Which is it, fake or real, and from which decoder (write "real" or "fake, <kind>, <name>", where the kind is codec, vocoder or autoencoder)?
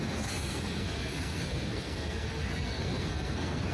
fake, codec, SNAC